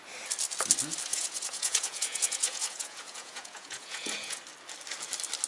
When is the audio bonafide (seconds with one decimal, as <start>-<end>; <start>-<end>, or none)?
0.0-1.1; 4.4-5.5